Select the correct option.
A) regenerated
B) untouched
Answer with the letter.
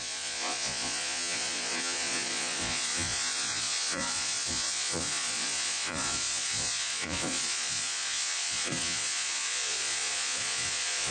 A